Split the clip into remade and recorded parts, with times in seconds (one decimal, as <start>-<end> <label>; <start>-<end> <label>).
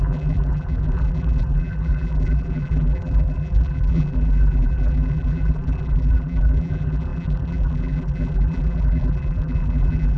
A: 0.0-10.2 remade